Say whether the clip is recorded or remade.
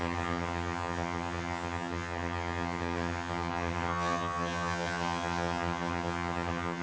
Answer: remade